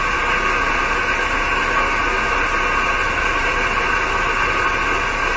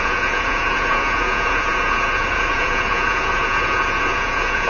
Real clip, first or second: first